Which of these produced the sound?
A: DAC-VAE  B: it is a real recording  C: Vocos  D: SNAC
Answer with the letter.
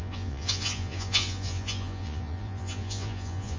C